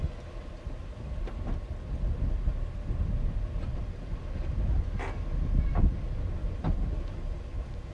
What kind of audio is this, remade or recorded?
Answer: recorded